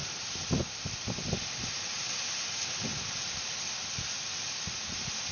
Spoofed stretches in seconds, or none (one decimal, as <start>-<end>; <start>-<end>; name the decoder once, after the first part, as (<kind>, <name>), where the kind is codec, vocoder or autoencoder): 0.0-0.6 (vocoder, BigVGAN v2); 2.9-3.7